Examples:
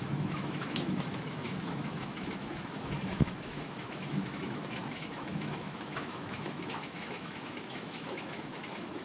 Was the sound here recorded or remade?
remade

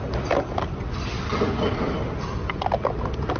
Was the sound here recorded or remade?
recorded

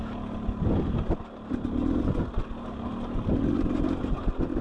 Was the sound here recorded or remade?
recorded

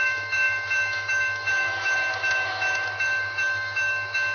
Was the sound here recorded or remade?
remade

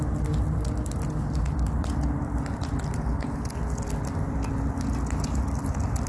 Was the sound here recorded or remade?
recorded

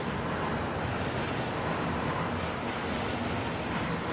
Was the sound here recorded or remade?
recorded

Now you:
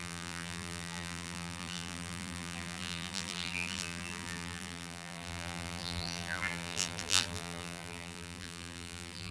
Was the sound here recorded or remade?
remade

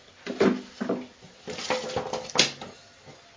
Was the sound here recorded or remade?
recorded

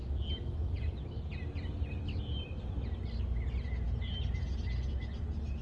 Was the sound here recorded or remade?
recorded